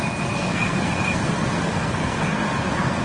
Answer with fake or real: fake